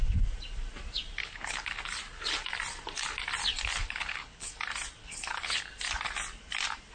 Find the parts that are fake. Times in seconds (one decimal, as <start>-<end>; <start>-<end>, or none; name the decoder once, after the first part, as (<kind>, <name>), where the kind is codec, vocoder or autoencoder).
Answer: 1.2-1.8 (codec, HILCodec); 3.8-4.5; 5.0-5.6